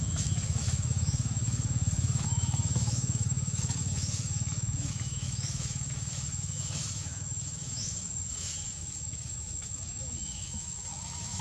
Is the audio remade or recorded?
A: remade